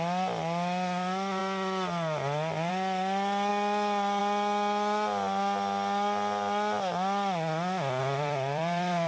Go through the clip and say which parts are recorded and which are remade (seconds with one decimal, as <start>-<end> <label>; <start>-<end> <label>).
0.0-8.0 recorded; 8.0-9.1 remade